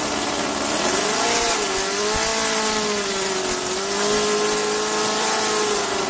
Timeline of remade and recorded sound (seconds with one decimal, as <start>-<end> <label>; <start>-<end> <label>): 0.0-6.1 recorded